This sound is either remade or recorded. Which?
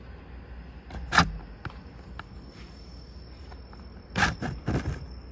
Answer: recorded